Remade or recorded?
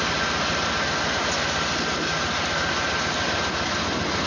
recorded